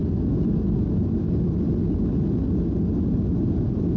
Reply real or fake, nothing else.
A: real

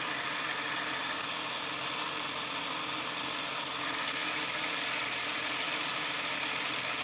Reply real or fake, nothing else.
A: real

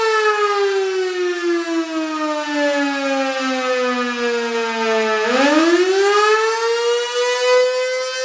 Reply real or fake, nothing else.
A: real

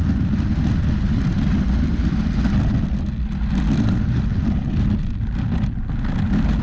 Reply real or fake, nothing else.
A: real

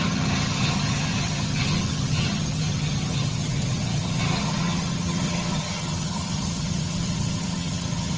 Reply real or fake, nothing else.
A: fake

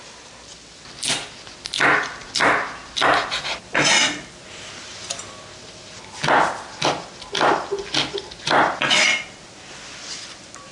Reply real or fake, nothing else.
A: real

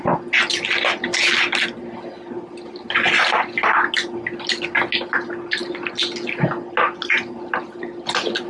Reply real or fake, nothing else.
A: real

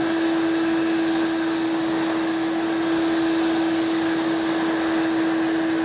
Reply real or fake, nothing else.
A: real